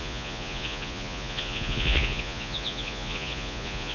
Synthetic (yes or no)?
yes